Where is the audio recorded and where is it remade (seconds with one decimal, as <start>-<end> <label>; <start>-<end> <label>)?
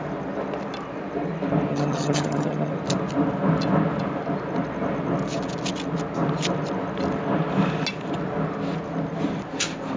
0.0-1.7 recorded; 1.7-2.7 remade; 2.7-10.0 recorded